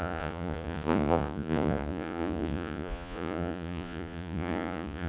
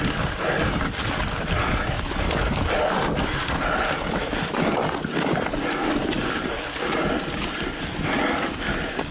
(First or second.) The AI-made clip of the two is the first